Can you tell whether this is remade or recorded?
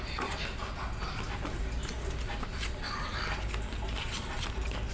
recorded